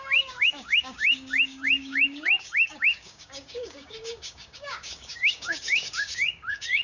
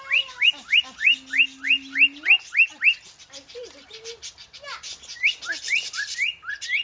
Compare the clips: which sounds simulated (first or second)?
first